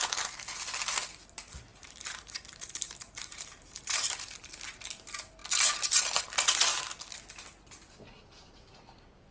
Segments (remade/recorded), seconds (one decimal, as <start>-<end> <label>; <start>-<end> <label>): 0.0-1.7 recorded; 1.7-4.3 remade; 4.3-9.3 recorded